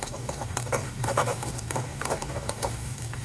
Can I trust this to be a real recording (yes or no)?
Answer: no